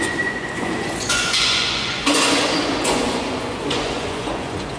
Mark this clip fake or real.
fake